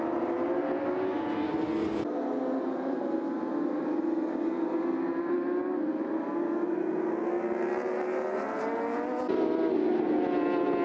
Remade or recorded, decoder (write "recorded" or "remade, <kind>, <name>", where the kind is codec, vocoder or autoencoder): recorded